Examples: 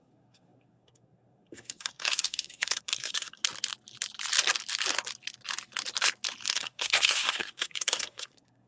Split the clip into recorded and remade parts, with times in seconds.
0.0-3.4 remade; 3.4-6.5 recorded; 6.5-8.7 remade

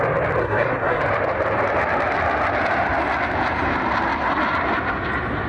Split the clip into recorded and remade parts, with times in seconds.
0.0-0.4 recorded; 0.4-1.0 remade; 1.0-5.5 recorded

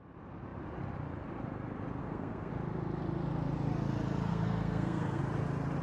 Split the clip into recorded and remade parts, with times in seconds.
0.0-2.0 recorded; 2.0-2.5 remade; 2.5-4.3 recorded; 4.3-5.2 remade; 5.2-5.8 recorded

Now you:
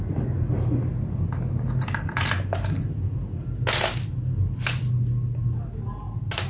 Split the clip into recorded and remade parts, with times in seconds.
0.0-6.5 recorded